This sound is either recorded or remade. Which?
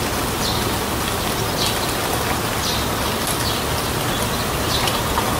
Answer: recorded